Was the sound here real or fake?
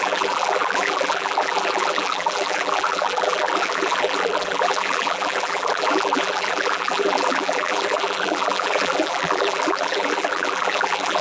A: fake